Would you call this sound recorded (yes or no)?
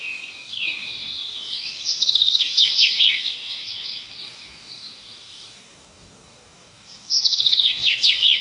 no